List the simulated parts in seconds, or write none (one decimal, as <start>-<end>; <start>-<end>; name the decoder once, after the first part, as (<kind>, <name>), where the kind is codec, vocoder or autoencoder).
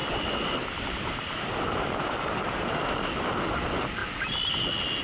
0.0-2.3 (vocoder, BigVGAN v2)